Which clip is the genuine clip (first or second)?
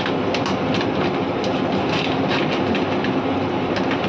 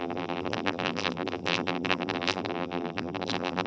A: first